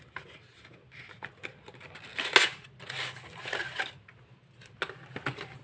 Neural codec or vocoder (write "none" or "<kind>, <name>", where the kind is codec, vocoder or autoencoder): none